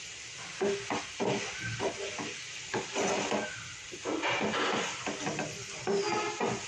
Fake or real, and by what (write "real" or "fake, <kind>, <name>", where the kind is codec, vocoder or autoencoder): real